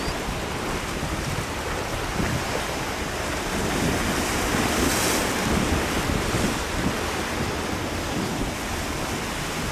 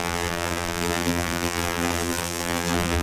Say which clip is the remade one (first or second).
second